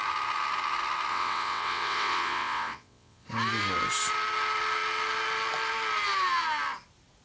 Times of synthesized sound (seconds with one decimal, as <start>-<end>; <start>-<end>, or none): 1.1-3.3